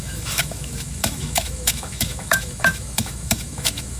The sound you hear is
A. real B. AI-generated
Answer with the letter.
B